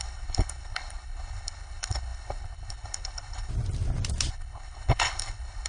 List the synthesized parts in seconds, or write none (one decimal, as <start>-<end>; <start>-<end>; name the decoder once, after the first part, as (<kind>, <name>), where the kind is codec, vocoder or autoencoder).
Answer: 0.0-3.5 (codec, HILCodec); 4.3-5.7